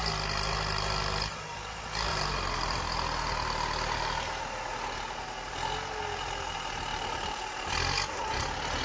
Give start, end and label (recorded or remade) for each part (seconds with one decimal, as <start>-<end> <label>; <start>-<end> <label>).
0.0-2.1 recorded; 2.1-2.8 remade; 2.8-6.9 recorded; 6.9-7.7 remade; 7.7-8.8 recorded